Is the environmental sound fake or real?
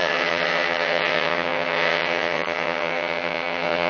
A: fake